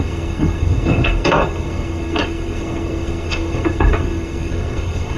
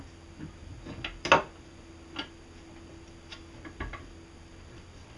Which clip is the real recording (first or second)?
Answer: second